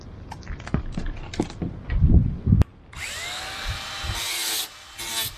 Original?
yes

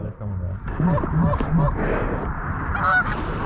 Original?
no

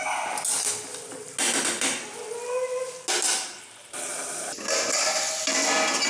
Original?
yes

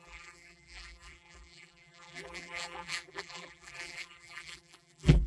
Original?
no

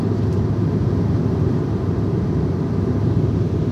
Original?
no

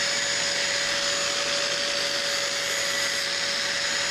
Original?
yes